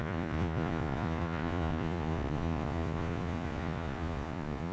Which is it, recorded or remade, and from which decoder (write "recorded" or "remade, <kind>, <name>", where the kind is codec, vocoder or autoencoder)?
remade, vocoder, Vocos